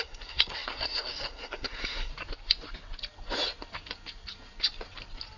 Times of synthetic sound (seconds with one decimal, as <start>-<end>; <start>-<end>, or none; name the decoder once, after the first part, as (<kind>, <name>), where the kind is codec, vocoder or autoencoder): 0.0-2.1 (codec, SNAC)